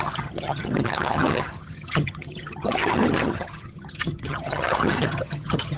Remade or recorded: remade